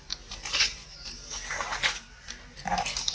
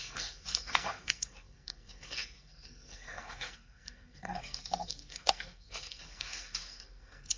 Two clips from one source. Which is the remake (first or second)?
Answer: second